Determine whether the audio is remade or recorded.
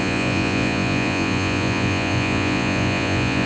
remade